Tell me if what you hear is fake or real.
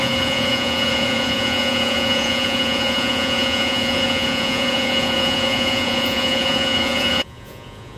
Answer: fake